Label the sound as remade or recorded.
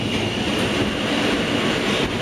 recorded